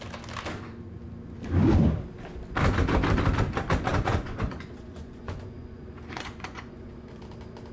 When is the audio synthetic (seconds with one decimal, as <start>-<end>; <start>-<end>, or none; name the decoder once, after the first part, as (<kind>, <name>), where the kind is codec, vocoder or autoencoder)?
3.9-7.2 (vocoder, Vocos)